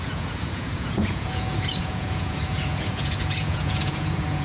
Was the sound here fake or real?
fake